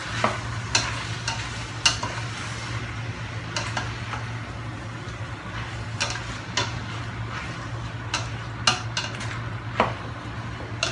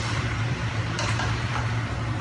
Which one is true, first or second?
first